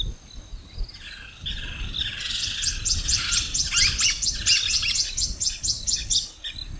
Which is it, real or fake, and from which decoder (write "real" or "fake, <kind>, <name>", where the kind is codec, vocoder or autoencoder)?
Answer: real